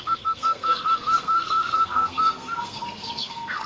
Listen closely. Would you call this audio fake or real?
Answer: fake